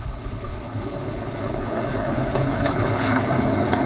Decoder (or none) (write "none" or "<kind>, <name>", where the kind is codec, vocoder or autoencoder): codec, HILCodec